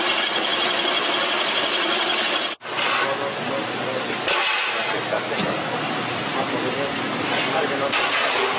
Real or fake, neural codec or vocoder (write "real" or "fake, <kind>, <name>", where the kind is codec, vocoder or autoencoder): real